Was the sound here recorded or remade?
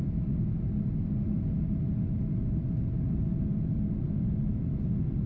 recorded